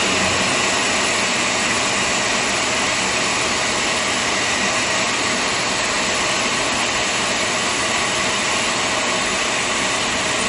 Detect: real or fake real